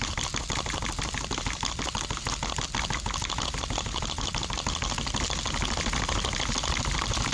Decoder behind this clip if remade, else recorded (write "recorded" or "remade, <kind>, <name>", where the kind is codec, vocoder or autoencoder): recorded